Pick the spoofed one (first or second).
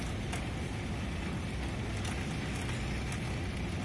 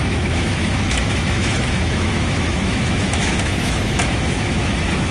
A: second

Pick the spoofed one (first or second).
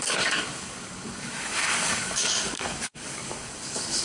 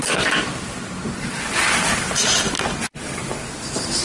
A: first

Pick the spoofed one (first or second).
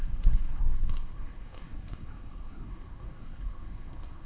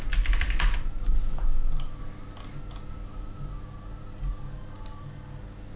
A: first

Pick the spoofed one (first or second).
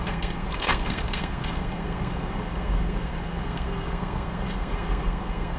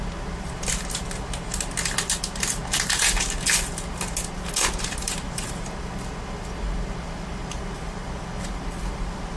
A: first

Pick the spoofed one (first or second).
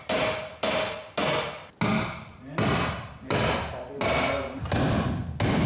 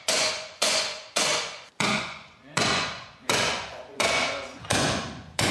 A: second